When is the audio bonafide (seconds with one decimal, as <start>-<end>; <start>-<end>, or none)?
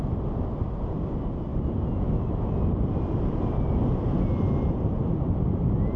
0.0-6.0